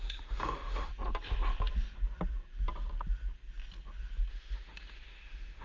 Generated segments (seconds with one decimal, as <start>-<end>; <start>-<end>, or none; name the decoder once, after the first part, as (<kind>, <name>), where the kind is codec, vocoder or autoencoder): 0.0-0.9 (autoencoder, DAC-VAE); 4.3-5.6